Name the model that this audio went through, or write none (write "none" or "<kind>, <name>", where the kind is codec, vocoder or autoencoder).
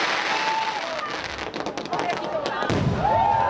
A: none